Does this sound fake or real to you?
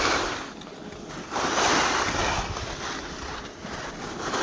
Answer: real